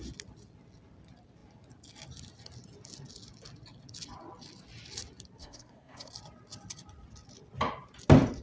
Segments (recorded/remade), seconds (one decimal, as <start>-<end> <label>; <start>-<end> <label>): 0.0-5.4 recorded; 5.4-6.1 remade; 6.1-8.4 recorded